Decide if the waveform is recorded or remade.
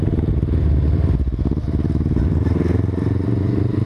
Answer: recorded